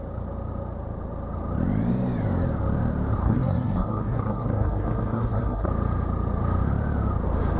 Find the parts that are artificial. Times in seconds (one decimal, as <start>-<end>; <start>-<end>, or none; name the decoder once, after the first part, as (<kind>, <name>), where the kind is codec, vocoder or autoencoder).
3.2-5.7 (codec, SNAC)